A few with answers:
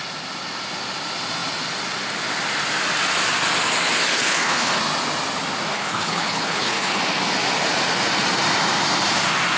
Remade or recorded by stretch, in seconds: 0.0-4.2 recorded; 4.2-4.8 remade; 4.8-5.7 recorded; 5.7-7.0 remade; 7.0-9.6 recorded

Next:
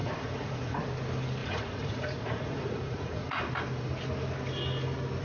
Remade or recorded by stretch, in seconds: 0.0-0.8 remade; 0.8-1.4 recorded; 1.4-3.4 remade; 3.4-5.2 recorded

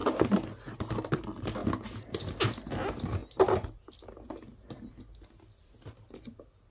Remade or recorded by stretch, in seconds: 0.0-6.7 recorded

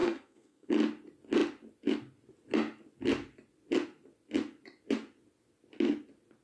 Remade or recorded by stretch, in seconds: 0.0-0.7 remade; 0.7-6.4 recorded

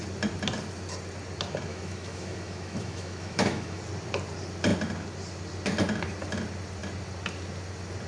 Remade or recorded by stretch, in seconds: 0.0-1.7 recorded; 1.7-3.8 remade; 3.8-8.1 recorded

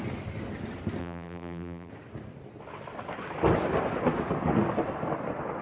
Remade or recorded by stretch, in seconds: 0.0-1.0 recorded; 1.0-1.9 remade; 1.9-5.6 recorded